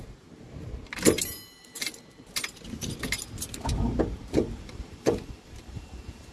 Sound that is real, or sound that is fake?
fake